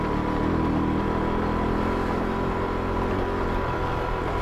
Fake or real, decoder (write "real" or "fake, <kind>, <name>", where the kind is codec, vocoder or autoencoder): real